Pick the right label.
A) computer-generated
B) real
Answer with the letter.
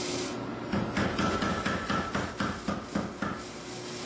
B